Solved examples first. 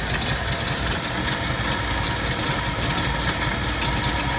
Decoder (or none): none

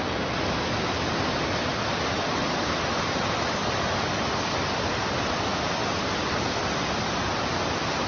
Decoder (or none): none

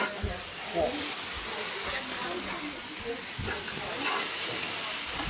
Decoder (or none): none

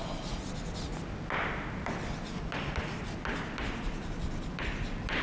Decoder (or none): none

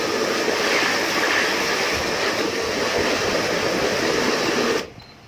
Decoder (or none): none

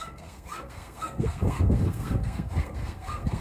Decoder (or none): codec, SNAC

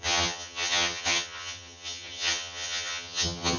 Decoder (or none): vocoder, HiFi-GAN